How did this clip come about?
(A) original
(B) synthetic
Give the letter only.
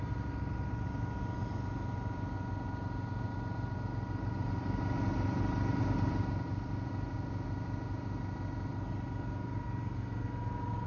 A